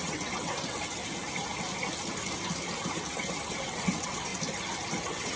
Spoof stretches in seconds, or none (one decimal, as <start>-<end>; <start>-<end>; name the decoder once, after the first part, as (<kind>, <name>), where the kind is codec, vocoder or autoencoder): 0.0-1.0 (vocoder, WaveNeXt); 3.5-4.3; 5.0-5.4